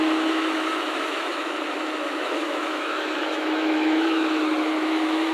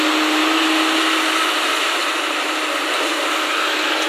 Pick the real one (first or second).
second